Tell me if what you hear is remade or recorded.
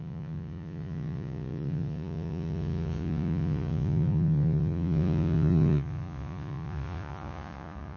remade